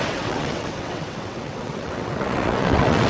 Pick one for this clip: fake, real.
fake